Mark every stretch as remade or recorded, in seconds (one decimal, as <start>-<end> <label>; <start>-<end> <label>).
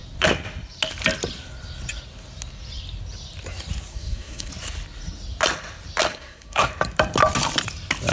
0.0-3.9 recorded; 3.9-4.5 remade; 4.5-6.1 recorded; 6.1-6.7 remade; 6.7-8.1 recorded